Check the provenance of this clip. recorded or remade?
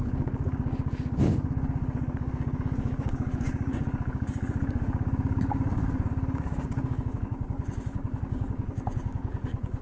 remade